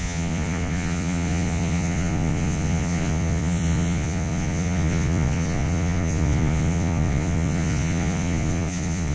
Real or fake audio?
fake